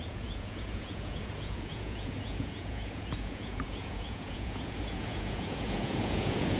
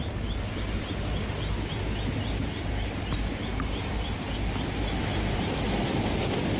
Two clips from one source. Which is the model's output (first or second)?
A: first